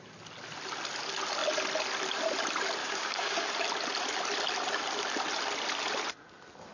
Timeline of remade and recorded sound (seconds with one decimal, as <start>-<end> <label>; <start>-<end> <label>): 0.0-2.8 recorded; 2.8-3.5 remade; 3.5-6.7 recorded